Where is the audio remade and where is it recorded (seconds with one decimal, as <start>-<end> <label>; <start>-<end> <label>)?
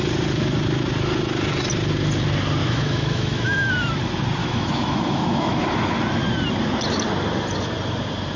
0.0-2.6 recorded; 2.6-3.7 remade; 3.7-4.4 recorded; 4.4-5.6 remade; 5.6-8.4 recorded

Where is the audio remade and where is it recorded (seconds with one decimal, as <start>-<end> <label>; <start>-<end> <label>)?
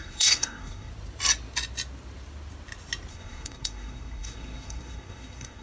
0.0-0.9 remade; 0.9-3.1 recorded; 3.1-5.6 remade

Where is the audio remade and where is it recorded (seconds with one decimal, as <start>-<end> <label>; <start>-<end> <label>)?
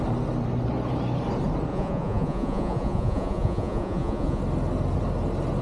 0.0-1.7 recorded; 1.7-4.4 remade; 4.4-5.6 recorded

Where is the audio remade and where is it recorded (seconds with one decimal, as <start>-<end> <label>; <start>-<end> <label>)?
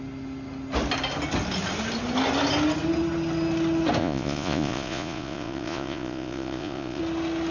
0.0-4.0 recorded; 4.0-7.0 remade; 7.0-7.5 recorded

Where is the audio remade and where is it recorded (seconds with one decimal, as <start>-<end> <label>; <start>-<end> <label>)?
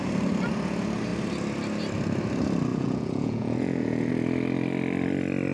0.0-2.7 recorded; 2.7-4.1 remade; 4.1-5.5 recorded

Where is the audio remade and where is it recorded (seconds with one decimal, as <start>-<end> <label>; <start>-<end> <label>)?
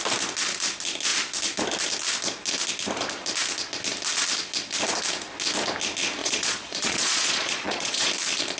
0.0-6.2 recorded; 6.2-8.1 remade; 8.1-8.6 recorded